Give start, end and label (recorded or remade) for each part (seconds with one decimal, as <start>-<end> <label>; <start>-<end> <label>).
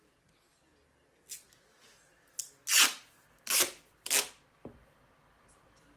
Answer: 0.0-6.0 recorded